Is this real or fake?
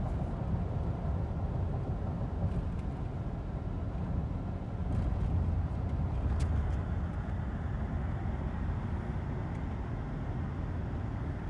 real